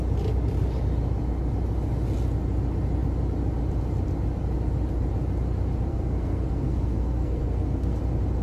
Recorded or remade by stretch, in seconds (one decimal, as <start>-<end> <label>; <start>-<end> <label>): 0.0-5.9 recorded; 5.9-8.0 remade; 8.0-8.4 recorded